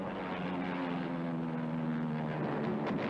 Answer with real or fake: real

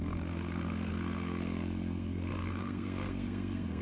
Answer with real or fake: fake